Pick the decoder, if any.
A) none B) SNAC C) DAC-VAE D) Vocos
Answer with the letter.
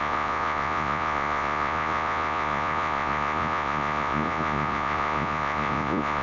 D